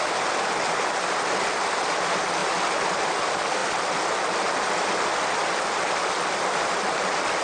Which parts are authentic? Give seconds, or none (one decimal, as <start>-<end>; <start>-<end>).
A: 0.0-7.4